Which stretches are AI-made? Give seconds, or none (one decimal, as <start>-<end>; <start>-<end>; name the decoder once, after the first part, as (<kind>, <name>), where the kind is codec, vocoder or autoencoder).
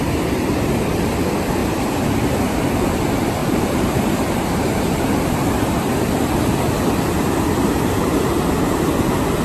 1.6-2.1 (vocoder, BigVGAN v2); 3.4-4.9